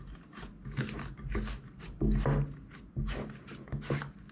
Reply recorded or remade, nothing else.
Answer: recorded